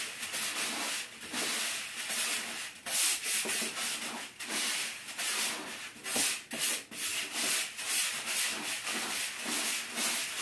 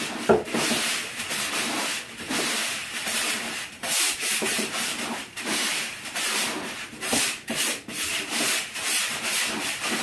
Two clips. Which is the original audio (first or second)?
first